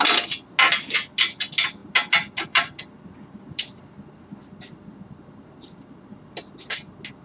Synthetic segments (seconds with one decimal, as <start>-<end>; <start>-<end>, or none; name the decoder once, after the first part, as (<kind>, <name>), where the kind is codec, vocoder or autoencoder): none